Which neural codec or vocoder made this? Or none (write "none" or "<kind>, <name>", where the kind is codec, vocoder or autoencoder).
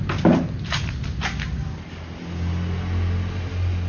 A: none